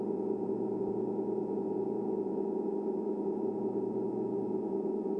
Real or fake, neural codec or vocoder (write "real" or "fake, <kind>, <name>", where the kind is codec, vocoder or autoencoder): fake, vocoder, Vocos